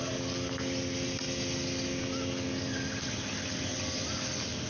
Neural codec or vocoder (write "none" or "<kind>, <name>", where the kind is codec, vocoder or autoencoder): none